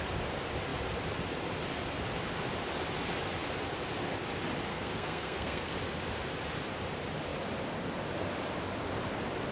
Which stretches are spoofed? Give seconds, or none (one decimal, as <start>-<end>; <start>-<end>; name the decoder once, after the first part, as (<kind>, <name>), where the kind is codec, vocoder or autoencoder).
4.7-5.7 (codec, SNAC)